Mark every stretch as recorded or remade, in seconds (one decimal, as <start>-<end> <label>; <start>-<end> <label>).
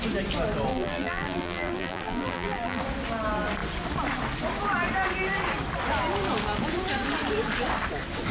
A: 0.0-0.7 recorded; 0.7-2.8 remade; 2.8-8.3 recorded